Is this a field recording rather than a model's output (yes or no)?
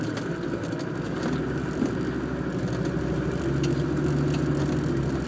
yes